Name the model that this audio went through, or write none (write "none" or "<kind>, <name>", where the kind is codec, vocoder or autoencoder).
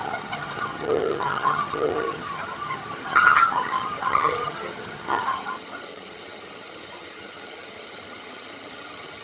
vocoder, HiFi-GAN